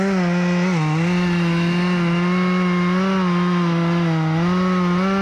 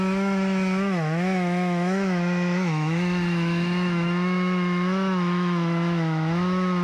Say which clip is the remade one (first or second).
second